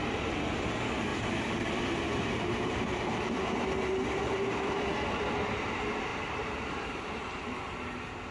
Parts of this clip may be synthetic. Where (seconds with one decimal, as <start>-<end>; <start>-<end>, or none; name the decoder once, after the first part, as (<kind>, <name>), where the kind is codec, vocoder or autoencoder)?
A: 1.1-2.7 (vocoder, BigVGAN v2); 6.1-6.7